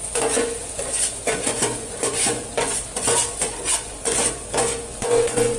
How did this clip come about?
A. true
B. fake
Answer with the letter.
B